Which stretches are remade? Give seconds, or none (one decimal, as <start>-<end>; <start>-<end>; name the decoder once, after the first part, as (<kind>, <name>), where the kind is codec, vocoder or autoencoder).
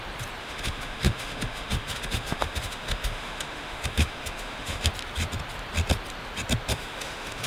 0.4-4.9 (autoencoder, DAC-VAE); 6.7-7.5